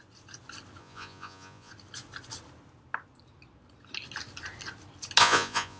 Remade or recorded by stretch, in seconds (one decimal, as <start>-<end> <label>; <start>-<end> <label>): 0.0-0.8 recorded; 0.8-1.7 remade; 1.7-5.2 recorded; 5.2-5.8 remade